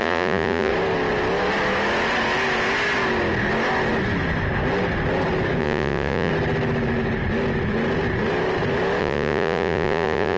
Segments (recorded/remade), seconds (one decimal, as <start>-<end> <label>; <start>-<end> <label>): 0.0-0.7 remade; 0.7-5.6 recorded; 5.6-6.3 remade; 6.3-9.0 recorded; 9.0-10.4 remade